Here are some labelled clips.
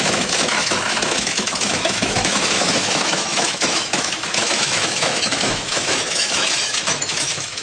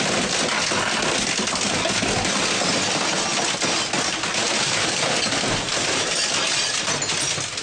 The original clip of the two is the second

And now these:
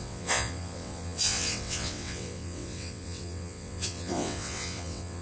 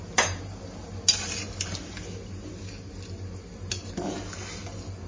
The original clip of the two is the second